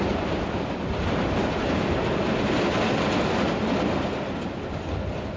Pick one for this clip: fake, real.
real